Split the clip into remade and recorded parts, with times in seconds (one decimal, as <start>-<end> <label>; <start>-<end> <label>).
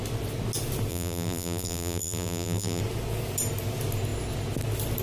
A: 0.0-0.9 recorded; 0.9-2.8 remade; 2.8-5.0 recorded